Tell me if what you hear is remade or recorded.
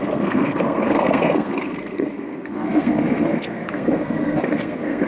remade